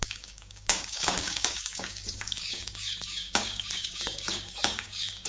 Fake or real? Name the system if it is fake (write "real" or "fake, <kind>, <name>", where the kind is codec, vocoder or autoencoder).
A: fake, codec, DAC